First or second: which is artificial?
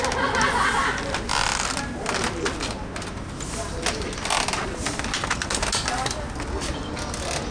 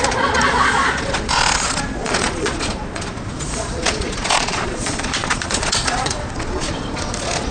second